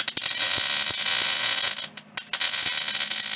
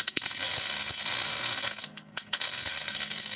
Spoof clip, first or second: second